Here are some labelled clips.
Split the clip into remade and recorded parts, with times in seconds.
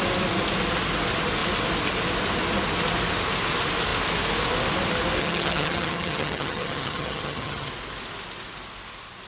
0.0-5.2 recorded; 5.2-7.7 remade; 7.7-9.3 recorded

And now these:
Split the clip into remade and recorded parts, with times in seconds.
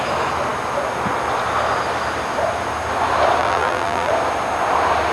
0.0-3.4 recorded; 3.4-4.1 remade; 4.1-5.1 recorded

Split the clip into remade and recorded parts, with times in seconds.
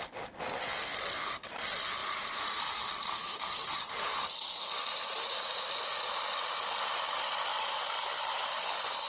0.0-2.0 recorded; 2.0-6.2 remade; 6.2-7.5 recorded; 7.5-9.1 remade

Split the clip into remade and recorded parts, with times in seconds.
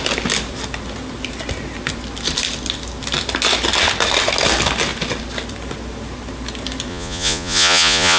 0.0-6.9 recorded; 6.9-8.2 remade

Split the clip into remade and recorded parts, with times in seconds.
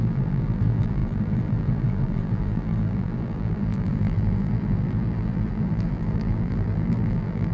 0.0-7.5 remade